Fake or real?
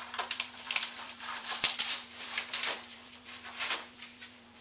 fake